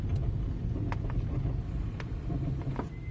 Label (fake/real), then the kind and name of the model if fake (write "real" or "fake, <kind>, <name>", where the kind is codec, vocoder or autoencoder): real